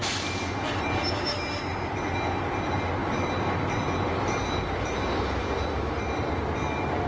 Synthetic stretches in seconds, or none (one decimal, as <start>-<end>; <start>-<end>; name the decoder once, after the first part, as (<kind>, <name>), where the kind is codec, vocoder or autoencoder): none